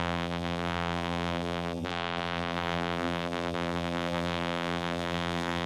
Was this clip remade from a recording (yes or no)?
yes